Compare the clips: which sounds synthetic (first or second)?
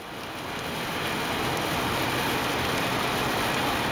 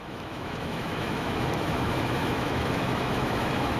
second